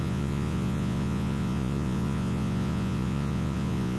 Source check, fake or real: fake